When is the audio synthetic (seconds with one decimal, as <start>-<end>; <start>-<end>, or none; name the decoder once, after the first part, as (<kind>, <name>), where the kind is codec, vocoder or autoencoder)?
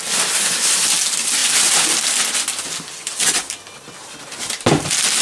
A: none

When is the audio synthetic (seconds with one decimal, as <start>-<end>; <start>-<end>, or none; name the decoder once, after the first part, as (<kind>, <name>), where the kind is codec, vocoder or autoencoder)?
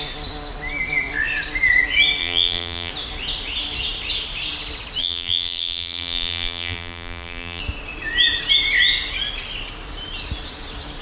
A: 2.2-2.9 (vocoder, BigVGAN v2); 5.0-7.6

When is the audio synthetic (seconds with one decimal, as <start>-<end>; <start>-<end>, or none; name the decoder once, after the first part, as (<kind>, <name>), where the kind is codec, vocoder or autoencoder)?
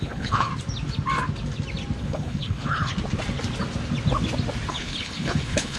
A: 0.0-0.5 (codec, HILCodec); 2.0-2.9; 4.7-5.8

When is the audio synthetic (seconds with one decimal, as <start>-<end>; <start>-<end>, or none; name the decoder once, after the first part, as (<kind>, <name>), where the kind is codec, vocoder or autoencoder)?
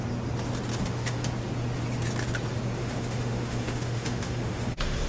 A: 0.7-1.3 (autoencoder, DAC-VAE); 2.8-5.1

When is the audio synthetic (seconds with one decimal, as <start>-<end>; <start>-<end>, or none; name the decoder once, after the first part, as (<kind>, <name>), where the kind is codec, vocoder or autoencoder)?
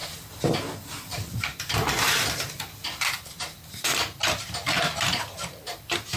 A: 1.1-4.8 (vocoder, BigVGAN v2)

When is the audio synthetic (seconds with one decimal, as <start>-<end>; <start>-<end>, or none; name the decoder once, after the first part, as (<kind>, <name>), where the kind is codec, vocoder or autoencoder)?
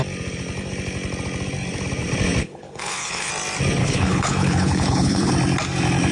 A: 2.4-3.3 (codec, HILCodec); 3.8-5.3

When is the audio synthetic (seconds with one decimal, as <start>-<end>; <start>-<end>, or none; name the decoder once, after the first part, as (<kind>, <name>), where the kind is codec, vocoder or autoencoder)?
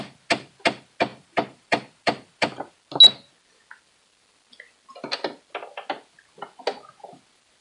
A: 1.1-2.7 (vocoder, BigVGAN v2)